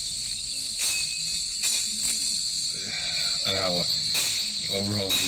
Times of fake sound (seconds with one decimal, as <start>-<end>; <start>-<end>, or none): none

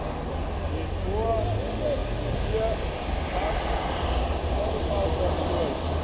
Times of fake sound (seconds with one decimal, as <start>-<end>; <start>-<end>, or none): none

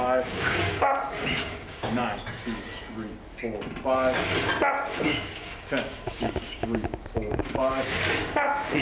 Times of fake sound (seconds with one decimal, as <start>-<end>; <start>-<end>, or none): 0.0-2.0; 5.0-8.8

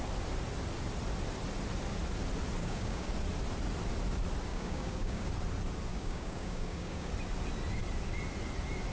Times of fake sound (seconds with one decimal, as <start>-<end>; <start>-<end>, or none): 2.6-3.1; 4.5-5.3; 5.9-7.1

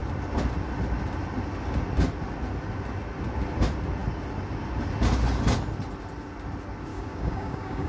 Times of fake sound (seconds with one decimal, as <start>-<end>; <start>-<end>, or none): 6.9-7.9

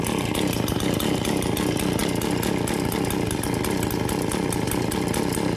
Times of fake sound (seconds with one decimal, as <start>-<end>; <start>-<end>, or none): none

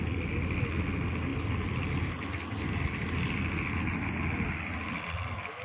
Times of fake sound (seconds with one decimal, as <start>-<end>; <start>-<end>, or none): none

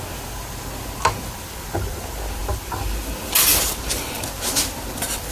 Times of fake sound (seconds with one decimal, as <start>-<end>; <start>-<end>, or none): none